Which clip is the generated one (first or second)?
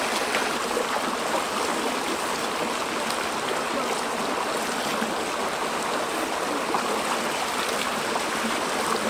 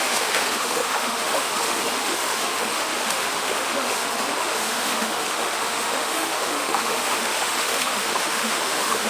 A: second